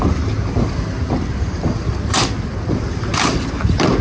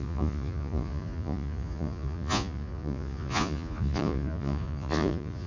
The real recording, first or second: first